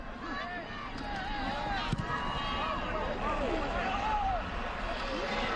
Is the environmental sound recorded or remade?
recorded